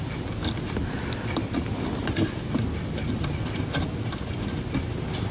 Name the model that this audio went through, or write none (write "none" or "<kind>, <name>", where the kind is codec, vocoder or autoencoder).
none